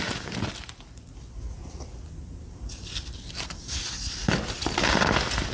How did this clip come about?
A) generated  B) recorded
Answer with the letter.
B